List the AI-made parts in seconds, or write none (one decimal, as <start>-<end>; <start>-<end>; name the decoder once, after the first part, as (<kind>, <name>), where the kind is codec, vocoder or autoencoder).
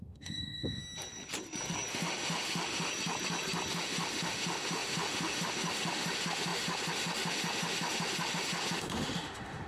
0.0-0.8 (autoencoder, DAC-VAE); 1.9-2.9; 3.7-9.7